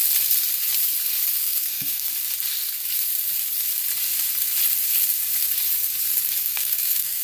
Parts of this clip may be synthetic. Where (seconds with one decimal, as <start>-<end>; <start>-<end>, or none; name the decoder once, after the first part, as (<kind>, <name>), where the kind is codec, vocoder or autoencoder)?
1.4-2.1 (codec, SNAC); 6.4-7.2